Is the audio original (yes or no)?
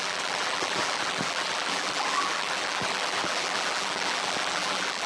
no